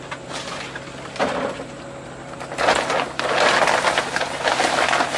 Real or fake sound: real